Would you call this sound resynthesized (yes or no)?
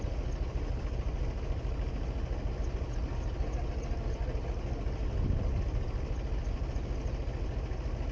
no